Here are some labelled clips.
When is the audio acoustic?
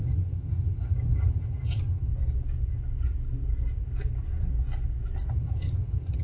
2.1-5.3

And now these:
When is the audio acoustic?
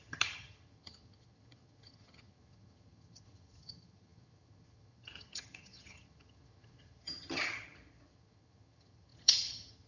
none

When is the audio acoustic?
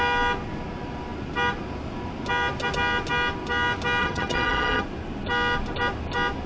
0.0-4.0; 4.8-6.5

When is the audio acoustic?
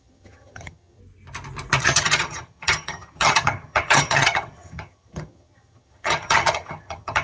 1.0-1.8